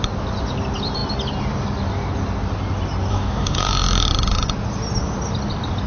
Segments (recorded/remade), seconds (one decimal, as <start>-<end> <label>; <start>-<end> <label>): 0.0-3.1 recorded; 3.1-3.7 remade; 3.7-5.9 recorded